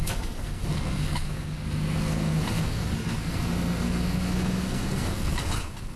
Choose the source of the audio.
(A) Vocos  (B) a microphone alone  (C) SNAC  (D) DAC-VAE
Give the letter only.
C